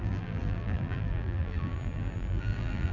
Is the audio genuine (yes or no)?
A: no